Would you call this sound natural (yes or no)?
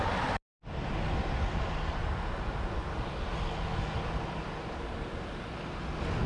yes